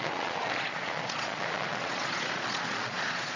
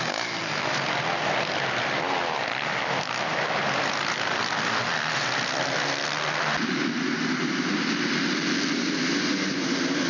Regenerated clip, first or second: first